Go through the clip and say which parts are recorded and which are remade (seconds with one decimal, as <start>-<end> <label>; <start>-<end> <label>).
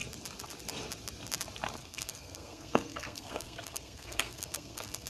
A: 0.0-1.8 recorded; 1.8-5.1 remade